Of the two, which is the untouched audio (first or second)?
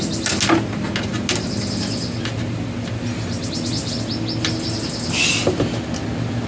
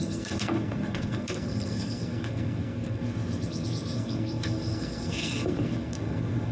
first